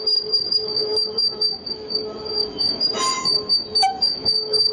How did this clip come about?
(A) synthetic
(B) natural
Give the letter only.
A